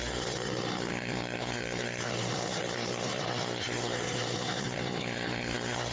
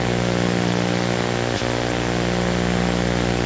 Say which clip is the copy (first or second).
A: first